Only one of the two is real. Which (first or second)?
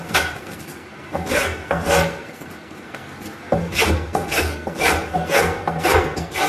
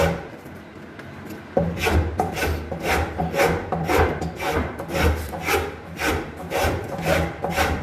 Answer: second